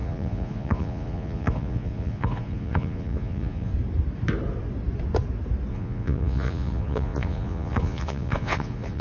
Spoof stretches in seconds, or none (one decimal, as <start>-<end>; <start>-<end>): 0.0-3.7; 5.7-9.0